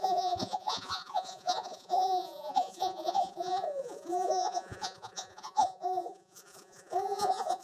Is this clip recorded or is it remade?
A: remade